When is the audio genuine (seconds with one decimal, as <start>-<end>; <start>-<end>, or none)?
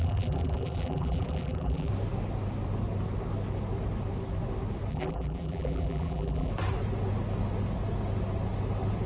1.9-4.9; 6.5-9.1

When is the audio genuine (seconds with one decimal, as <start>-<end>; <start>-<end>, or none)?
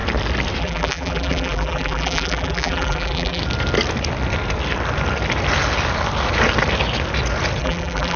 0.0-0.6; 3.4-7.6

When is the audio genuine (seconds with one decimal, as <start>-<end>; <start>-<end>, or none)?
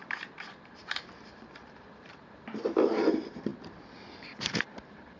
3.5-4.7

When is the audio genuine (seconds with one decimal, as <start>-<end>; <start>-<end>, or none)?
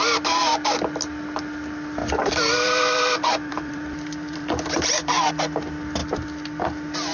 0.0-2.0; 5.3-6.0; 6.6-7.1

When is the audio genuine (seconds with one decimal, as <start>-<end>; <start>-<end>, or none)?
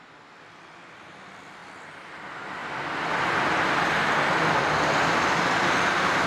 0.0-2.6; 5.6-6.3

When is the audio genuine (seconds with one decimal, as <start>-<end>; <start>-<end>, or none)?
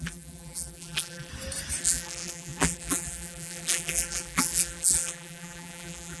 1.3-1.8